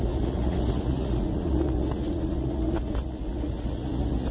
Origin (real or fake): fake